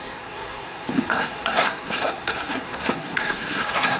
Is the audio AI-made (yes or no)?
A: yes